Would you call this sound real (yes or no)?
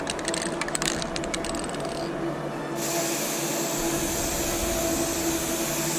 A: yes